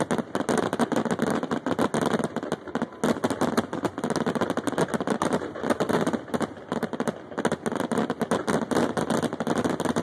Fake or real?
real